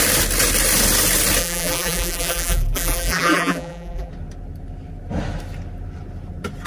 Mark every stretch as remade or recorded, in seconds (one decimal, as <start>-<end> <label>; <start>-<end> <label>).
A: 0.0-1.4 recorded; 1.4-4.1 remade; 4.1-6.7 recorded